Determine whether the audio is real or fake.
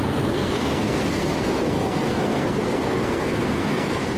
fake